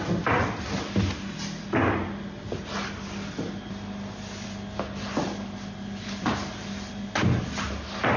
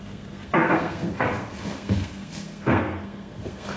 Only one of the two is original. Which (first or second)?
first